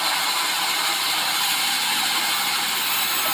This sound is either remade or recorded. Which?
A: remade